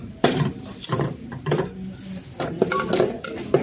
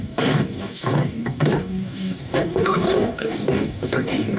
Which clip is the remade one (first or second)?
second